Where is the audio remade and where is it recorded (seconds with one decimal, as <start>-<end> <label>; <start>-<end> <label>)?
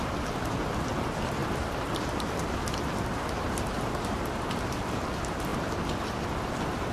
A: 0.0-6.9 recorded